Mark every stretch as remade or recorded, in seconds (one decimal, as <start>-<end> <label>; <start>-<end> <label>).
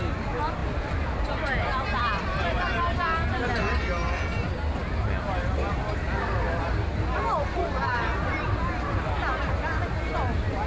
0.0-10.7 recorded